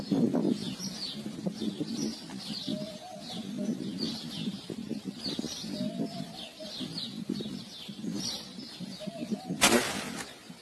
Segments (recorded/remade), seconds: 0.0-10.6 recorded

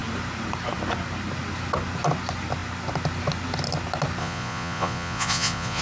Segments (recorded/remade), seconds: 0.0-4.2 recorded; 4.2-5.8 remade

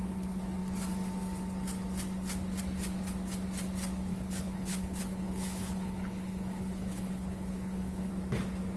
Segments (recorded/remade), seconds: 0.0-4.1 recorded; 4.1-8.1 remade; 8.1-8.8 recorded

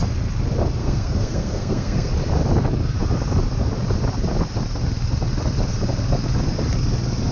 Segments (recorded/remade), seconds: 0.0-0.8 recorded; 0.8-2.1 remade; 2.1-7.3 recorded

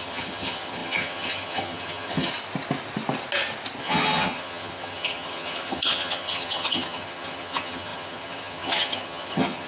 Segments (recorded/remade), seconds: 0.0-2.3 remade; 2.3-3.8 recorded; 3.8-9.7 remade

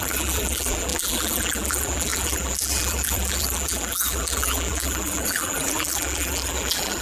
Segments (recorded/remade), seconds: 0.0-7.0 remade